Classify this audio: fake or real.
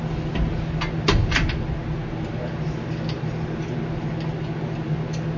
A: real